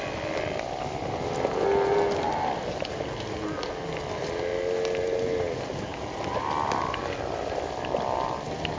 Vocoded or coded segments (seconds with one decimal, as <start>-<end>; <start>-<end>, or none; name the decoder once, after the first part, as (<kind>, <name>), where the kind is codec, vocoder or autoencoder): none